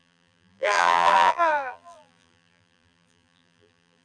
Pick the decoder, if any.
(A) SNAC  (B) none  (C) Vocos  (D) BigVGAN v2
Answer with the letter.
D